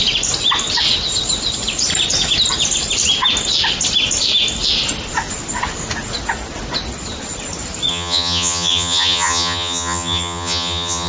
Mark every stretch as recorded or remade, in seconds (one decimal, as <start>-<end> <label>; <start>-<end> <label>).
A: 0.0-7.9 recorded; 7.9-11.1 remade